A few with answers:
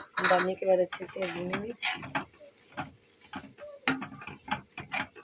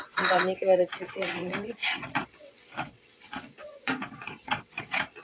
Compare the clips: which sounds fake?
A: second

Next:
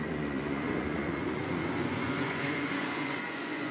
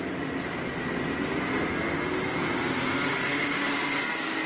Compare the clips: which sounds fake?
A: first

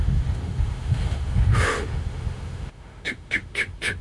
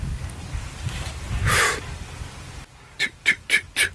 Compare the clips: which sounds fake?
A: first